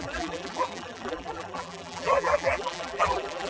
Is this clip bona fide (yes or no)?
no